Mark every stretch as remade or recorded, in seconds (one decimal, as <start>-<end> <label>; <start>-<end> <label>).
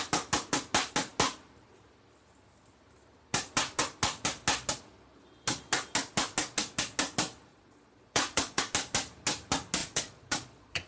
0.0-7.5 recorded; 7.5-8.6 remade; 8.6-9.8 recorded; 9.8-10.9 remade